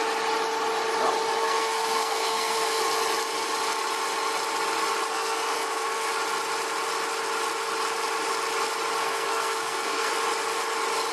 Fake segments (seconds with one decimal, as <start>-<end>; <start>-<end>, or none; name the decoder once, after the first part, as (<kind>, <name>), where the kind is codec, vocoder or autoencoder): 1.4-2.8 (codec, SNAC); 5.1-6.1; 9.0-10.1